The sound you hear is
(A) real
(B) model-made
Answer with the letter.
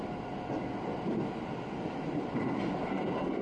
A